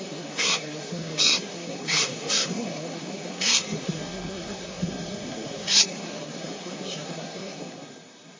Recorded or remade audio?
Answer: remade